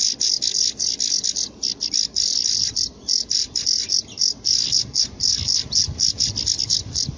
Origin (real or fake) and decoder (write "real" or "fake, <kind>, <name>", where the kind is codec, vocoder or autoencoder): real